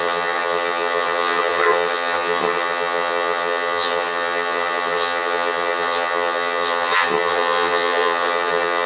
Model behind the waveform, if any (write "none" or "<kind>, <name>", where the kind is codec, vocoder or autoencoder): vocoder, HiFi-GAN